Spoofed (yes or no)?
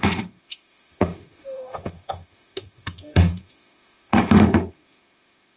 yes